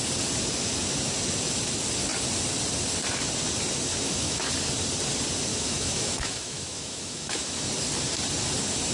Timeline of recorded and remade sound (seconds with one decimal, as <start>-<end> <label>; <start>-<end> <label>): 0.0-3.9 recorded; 3.9-4.5 remade; 4.5-5.5 recorded; 5.5-7.5 remade; 7.5-8.9 recorded